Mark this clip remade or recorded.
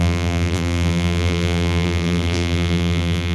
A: remade